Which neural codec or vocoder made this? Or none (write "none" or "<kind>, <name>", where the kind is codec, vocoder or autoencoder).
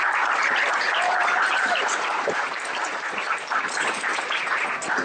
vocoder, BigVGAN v2